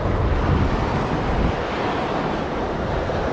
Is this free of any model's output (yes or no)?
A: yes